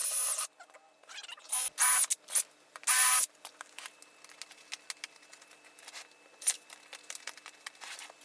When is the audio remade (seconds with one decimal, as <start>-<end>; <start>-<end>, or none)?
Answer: none